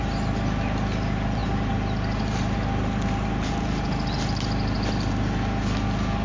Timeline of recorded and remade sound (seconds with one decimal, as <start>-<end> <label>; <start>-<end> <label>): 0.0-6.2 recorded